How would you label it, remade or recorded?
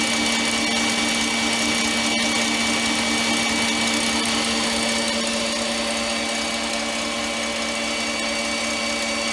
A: recorded